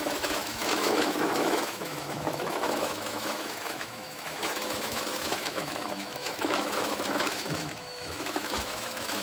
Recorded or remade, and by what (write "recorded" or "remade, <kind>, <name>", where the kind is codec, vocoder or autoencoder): remade, autoencoder, DAC-VAE